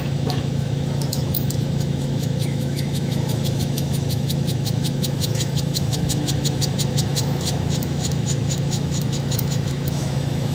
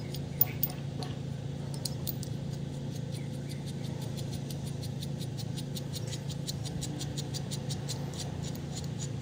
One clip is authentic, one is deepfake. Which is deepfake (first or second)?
first